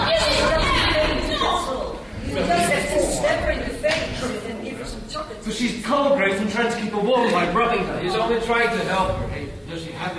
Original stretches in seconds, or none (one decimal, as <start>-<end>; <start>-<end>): 0.0-10.2